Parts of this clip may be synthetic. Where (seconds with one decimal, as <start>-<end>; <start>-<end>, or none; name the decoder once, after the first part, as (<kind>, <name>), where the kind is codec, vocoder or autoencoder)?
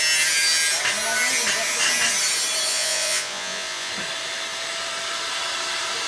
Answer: 2.7-3.9 (vocoder, Vocos)